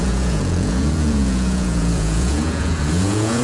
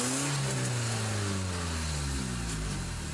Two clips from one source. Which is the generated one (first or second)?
first